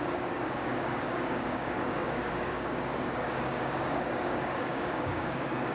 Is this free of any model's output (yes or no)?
no